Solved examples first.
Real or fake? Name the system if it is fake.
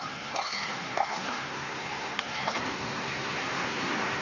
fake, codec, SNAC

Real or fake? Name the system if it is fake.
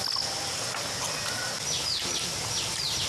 real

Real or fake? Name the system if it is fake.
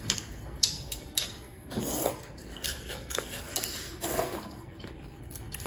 fake, codec, SNAC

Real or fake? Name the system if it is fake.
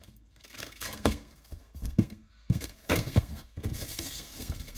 fake, codec, SNAC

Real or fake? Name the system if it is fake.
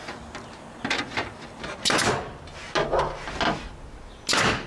real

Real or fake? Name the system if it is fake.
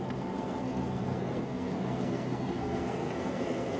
fake, codec, SNAC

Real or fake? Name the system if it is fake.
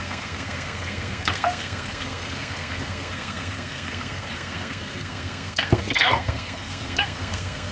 fake, codec, SNAC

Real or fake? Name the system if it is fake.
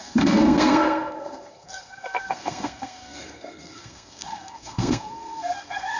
fake, codec, SNAC